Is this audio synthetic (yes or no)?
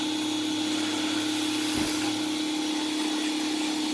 no